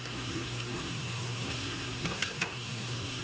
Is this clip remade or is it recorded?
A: remade